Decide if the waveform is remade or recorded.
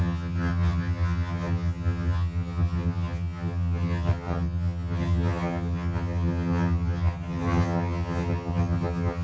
remade